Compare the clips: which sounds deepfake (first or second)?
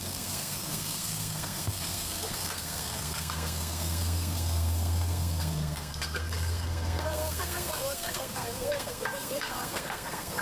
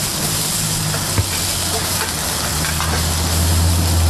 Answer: first